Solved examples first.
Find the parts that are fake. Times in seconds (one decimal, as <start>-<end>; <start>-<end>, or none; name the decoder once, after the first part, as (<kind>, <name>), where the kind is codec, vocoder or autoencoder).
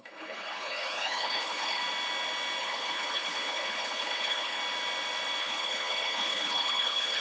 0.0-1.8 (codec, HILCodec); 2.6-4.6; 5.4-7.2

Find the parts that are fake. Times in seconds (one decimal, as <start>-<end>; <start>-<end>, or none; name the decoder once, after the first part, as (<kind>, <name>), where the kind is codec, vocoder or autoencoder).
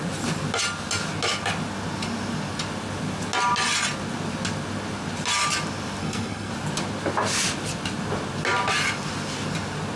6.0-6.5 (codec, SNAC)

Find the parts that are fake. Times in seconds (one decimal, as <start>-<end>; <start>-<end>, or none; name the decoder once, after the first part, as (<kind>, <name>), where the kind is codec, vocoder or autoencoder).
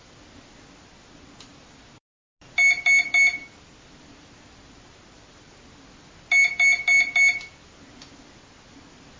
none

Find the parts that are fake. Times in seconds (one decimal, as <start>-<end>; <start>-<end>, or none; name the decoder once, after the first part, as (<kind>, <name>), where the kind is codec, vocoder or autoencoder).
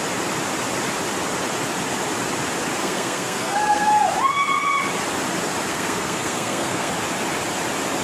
2.8-3.9 (codec, SNAC); 5.7-6.9